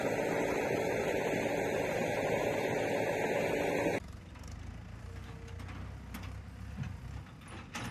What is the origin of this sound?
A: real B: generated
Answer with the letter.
A